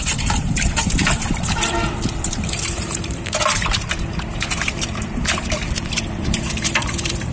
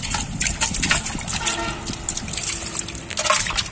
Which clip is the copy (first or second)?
first